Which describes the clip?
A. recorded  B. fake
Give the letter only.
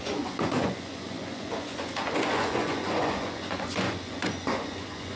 B